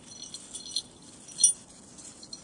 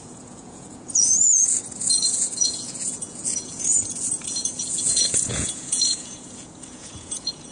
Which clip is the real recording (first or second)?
first